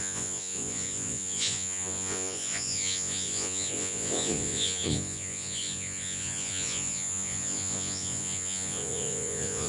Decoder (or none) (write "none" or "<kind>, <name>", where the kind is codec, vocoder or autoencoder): vocoder, Vocos